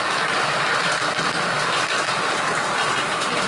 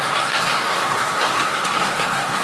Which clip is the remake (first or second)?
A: second